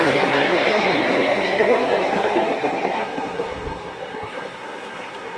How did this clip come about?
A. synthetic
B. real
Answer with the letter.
A